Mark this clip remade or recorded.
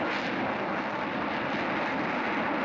recorded